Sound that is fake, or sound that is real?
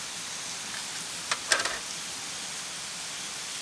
real